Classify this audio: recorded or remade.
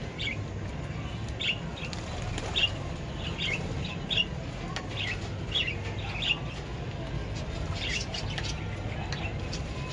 recorded